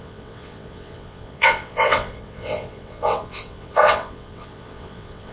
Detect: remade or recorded remade